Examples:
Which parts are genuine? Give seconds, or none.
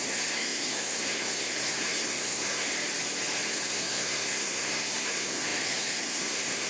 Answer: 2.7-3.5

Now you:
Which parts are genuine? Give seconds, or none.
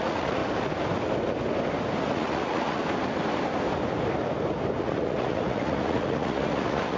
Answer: 0.4-2.0; 2.8-4.8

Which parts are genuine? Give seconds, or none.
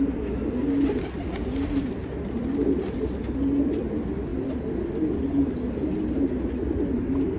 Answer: 0.0-7.4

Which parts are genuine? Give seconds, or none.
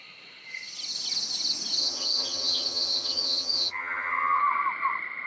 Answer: 0.0-1.8; 4.4-5.3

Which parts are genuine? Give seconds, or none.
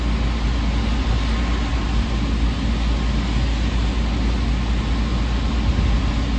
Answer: 0.0-6.4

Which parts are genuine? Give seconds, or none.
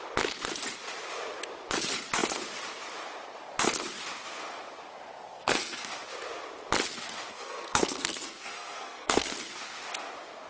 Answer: 0.0-5.3; 5.9-7.3; 9.3-10.5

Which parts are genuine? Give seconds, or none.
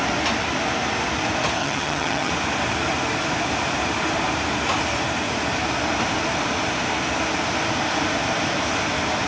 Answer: 0.0-1.6; 2.3-9.3